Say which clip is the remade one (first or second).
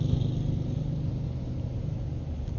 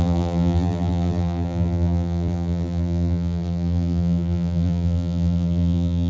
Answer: second